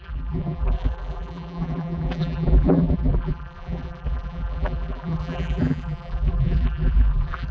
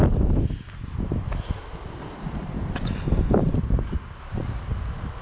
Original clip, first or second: second